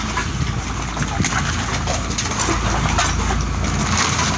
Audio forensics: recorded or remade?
recorded